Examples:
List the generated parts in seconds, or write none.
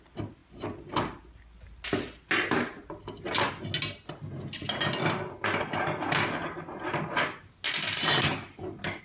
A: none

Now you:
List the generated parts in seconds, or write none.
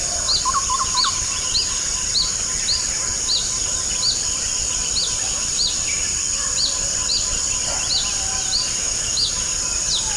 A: 8.8-9.3 (autoencoder, DAC-VAE)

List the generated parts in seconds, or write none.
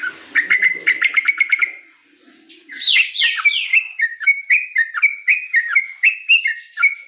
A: 3.7-4.4 (autoencoder, DAC-VAE)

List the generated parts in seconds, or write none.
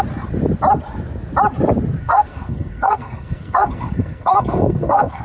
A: 2.0-5.2 (codec, SNAC)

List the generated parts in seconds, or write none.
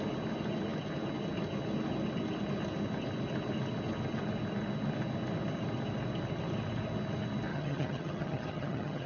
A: 7.5-9.1 (vocoder, HiFi-GAN)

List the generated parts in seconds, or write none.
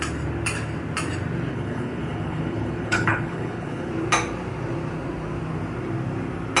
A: 1.5-3.9 (codec, HILCodec)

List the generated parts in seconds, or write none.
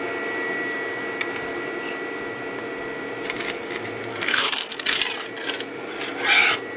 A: 4.1-5.0 (codec, SNAC)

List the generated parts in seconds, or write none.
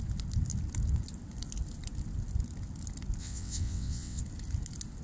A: 3.2-4.2 (vocoder, WaveNeXt)